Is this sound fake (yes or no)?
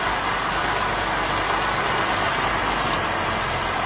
no